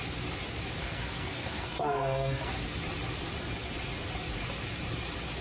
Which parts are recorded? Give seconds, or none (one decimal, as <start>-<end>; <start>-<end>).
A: 0.0-0.8; 2.5-5.4